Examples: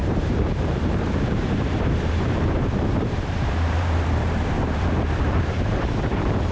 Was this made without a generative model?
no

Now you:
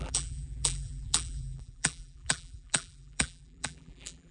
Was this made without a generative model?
no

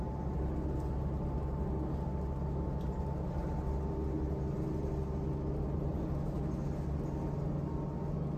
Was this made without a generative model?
yes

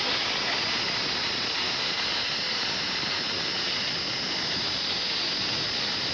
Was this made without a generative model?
yes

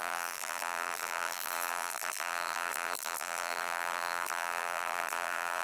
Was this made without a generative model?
no